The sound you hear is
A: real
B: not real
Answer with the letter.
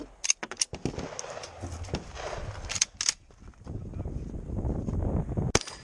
A